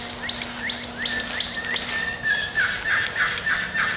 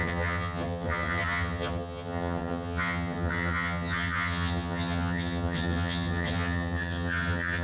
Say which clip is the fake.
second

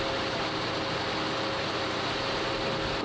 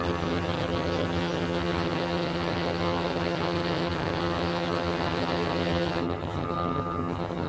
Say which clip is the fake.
second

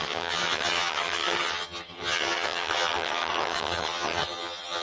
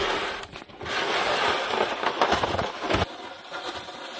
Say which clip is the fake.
first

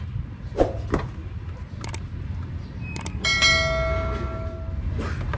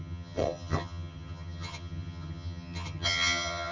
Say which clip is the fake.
second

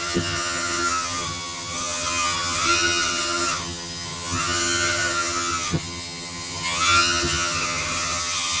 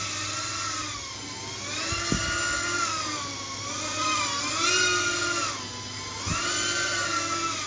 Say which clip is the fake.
first